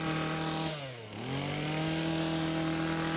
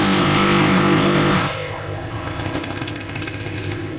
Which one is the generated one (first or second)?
second